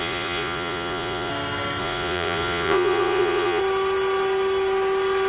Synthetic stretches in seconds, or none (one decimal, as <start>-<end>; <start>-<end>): 0.0-1.3; 1.8-3.6